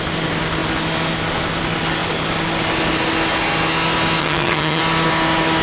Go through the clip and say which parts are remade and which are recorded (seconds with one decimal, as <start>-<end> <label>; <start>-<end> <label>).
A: 0.0-4.2 recorded; 4.2-4.8 remade; 4.8-5.6 recorded

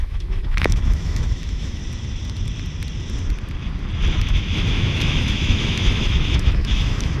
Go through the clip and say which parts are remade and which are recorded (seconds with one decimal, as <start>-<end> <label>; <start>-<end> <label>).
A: 0.0-1.8 remade; 1.8-4.2 recorded; 4.2-7.2 remade

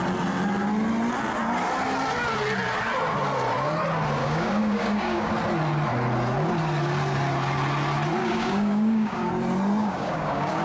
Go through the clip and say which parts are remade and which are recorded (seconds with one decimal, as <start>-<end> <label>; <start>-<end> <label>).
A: 0.0-4.2 recorded; 4.2-5.3 remade; 5.3-8.2 recorded; 8.2-9.3 remade; 9.3-9.8 recorded; 9.8-10.6 remade

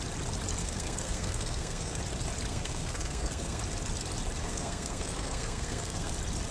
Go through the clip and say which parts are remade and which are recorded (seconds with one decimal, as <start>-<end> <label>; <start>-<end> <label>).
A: 0.0-0.6 recorded; 0.6-2.0 remade; 2.0-2.5 recorded; 2.5-3.6 remade; 3.6-4.4 recorded; 4.4-6.1 remade; 6.1-6.5 recorded

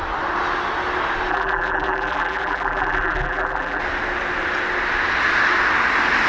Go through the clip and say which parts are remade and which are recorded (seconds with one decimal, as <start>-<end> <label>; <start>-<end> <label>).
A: 0.0-1.3 recorded; 1.3-3.8 remade; 3.8-6.3 recorded

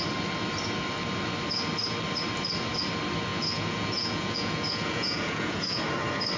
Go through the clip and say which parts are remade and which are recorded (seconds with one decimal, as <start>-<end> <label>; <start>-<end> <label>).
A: 0.0-3.3 recorded; 3.3-5.8 remade; 5.8-6.4 recorded